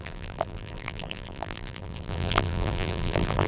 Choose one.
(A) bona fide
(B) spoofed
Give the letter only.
B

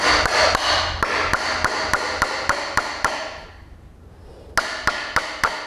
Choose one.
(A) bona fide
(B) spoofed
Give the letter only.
A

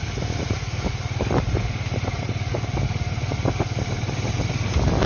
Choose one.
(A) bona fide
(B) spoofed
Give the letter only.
A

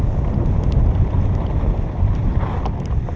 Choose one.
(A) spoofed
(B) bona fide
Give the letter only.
B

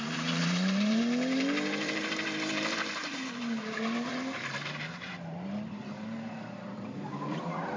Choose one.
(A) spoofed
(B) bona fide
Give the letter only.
A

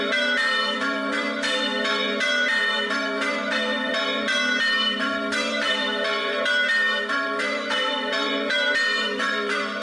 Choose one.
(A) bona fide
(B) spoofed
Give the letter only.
B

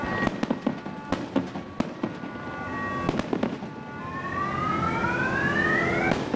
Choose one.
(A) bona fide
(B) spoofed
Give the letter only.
A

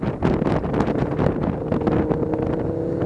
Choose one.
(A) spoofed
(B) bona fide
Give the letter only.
B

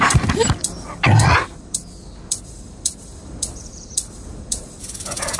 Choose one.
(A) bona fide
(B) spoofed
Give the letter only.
B